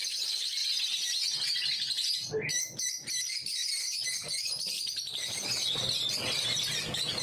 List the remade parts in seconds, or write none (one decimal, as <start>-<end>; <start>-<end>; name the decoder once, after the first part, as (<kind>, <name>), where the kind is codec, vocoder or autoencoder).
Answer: none